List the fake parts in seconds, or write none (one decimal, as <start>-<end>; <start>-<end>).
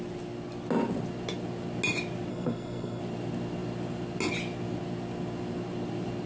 2.3-3.0